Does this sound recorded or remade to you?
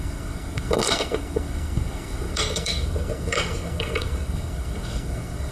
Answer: remade